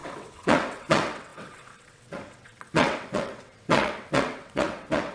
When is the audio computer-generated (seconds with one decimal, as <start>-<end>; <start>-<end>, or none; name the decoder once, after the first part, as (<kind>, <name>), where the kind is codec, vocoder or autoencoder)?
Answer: 0.0-5.1 (vocoder, WaveNeXt)